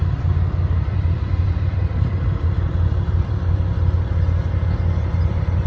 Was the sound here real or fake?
fake